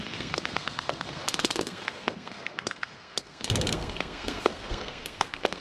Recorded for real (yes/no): no